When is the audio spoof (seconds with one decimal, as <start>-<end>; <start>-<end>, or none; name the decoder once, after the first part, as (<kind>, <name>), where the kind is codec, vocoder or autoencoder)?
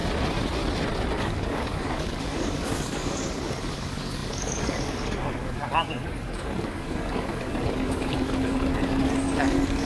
1.2-9.8 (codec, DAC)